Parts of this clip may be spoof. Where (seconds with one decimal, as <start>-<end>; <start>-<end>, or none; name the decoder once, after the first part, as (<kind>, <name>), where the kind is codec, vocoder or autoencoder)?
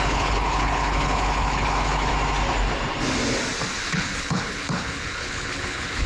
0.0-2.1 (codec, HILCodec); 3.8-6.1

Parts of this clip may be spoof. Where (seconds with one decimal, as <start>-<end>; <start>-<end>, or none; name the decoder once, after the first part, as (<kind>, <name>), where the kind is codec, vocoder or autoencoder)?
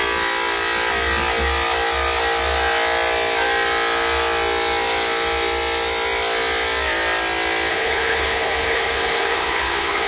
7.7-10.1 (codec, HILCodec)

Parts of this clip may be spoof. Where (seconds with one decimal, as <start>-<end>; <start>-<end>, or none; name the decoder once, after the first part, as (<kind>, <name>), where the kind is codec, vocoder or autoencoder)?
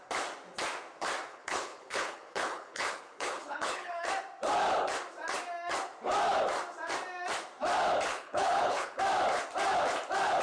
1.3-4.1 (codec, HILCodec); 8.1-9.0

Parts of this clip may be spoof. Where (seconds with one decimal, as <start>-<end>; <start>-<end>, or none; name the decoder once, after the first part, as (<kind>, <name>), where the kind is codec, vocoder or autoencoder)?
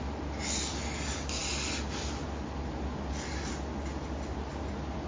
none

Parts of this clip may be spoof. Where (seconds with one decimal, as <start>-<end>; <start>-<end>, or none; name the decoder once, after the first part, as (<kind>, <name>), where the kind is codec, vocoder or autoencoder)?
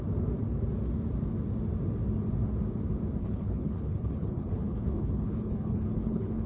3.2-6.5 (codec, HILCodec)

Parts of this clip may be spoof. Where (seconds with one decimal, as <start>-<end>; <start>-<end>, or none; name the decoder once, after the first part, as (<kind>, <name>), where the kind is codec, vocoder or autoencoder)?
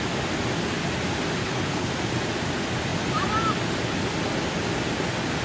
1.4-1.9 (codec, HILCodec)